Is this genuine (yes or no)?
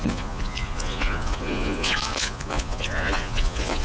no